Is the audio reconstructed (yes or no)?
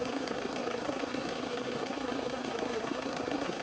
yes